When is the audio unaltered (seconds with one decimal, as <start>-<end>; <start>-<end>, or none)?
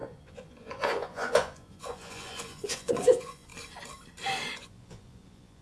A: 3.5-4.5